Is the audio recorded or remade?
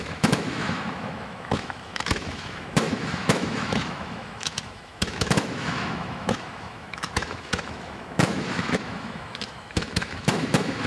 remade